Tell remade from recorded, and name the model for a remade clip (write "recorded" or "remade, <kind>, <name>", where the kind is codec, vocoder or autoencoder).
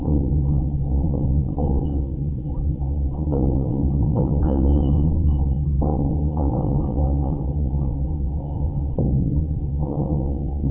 remade, vocoder, WaveNeXt